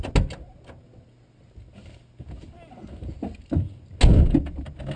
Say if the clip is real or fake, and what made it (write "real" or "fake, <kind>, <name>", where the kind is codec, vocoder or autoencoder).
real